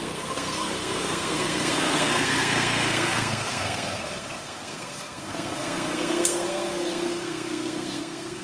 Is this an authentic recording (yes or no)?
no